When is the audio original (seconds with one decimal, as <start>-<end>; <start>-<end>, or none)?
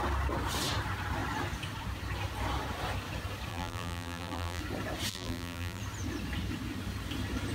0.0-3.5; 4.6-5.1; 5.8-7.5